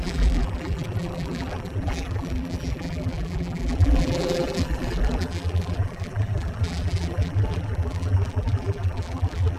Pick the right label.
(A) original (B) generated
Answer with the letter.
B